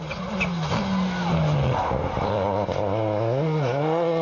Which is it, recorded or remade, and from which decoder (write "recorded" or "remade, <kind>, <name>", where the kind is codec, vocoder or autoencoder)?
recorded